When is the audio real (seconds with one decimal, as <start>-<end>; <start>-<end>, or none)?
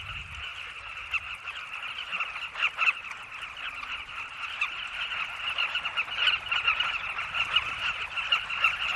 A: 0.0-9.0